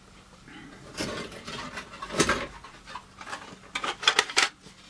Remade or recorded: recorded